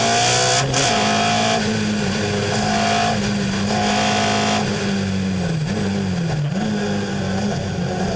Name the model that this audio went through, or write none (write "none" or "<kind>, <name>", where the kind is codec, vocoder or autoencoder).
none